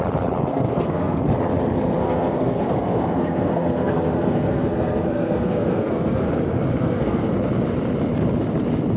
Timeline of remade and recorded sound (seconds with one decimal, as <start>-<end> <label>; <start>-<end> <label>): 0.0-0.5 recorded; 0.5-1.2 remade; 1.2-2.0 recorded; 2.0-6.2 remade; 6.2-6.8 recorded; 6.8-7.3 remade; 7.3-9.0 recorded